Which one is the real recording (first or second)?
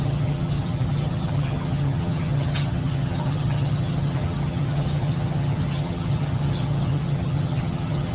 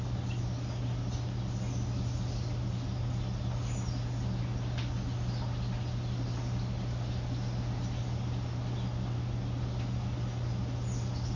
second